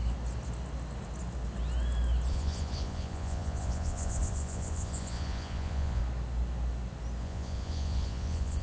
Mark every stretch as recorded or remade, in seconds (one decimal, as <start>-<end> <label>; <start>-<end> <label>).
0.0-2.3 recorded; 2.3-6.0 remade; 6.0-7.2 recorded; 7.2-8.6 remade